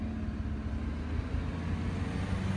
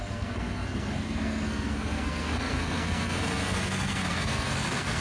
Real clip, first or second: first